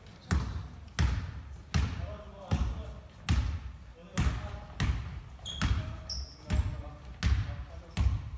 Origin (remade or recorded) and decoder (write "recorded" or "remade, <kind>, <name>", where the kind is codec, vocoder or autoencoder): recorded